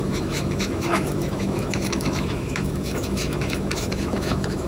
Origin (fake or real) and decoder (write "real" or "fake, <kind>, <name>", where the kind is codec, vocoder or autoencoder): fake, autoencoder, DAC-VAE